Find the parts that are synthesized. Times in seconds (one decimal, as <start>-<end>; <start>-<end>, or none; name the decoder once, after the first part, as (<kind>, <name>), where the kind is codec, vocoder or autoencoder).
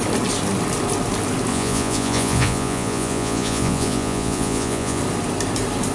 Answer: 1.5-5.0 (vocoder, Vocos)